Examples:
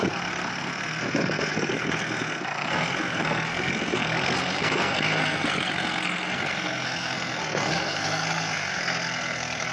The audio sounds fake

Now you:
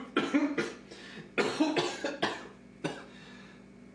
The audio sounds real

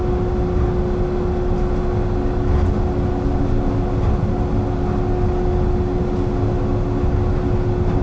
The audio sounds real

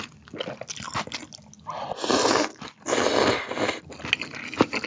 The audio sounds real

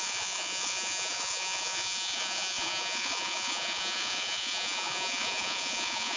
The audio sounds fake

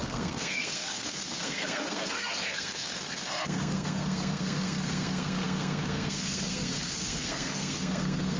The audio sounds fake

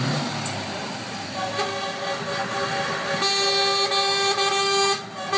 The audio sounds real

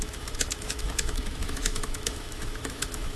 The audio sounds fake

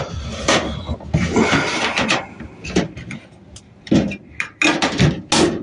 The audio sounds real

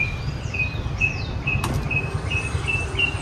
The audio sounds real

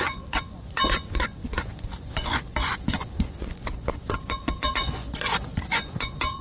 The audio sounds fake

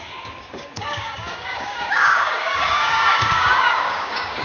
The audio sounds fake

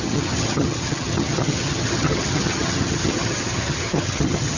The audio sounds fake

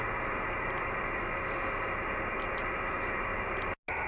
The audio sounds real